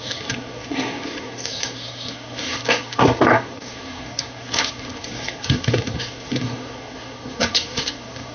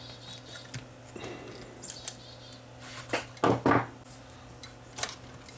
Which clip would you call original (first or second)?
second